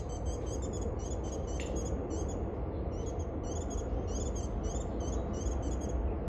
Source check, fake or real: real